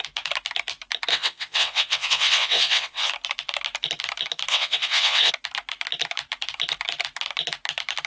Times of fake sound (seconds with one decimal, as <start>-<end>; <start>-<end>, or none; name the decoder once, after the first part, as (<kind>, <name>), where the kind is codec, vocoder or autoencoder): 1.1-3.1 (vocoder, WaveNeXt); 4.5-5.3